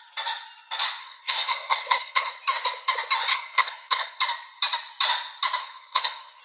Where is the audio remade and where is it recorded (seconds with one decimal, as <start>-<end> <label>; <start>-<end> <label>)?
0.0-1.0 recorded; 1.0-2.3 remade; 2.3-3.3 recorded; 3.3-4.2 remade; 4.2-5.6 recorded; 5.6-6.4 remade